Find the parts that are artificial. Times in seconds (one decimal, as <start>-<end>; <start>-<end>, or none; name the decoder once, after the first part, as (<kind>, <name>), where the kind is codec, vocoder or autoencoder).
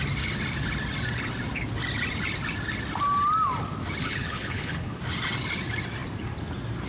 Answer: 4.0-5.0 (codec, HILCodec)